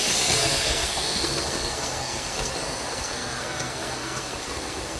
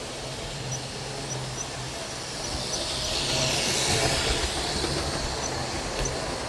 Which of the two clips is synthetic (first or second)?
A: first